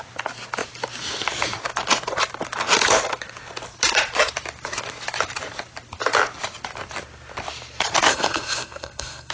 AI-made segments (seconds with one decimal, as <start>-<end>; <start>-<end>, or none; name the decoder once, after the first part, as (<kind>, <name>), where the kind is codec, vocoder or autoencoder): 8.1-9.3 (codec, SNAC)